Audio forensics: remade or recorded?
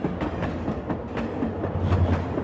recorded